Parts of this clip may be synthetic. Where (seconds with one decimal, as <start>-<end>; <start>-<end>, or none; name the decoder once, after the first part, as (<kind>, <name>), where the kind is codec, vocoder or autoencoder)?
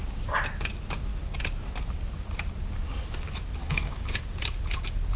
3.6-4.2 (codec, DAC)